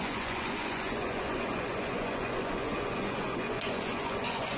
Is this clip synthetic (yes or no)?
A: yes